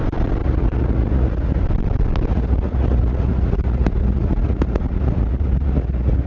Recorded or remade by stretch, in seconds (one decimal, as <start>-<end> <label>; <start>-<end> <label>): 0.0-0.4 recorded; 0.4-1.6 remade; 1.6-2.3 recorded; 2.3-6.3 remade